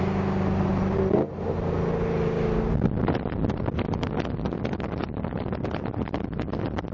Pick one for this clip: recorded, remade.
recorded